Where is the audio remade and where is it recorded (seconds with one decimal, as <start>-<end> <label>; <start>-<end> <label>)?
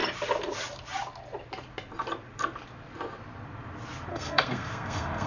0.0-4.1 recorded; 4.1-5.3 remade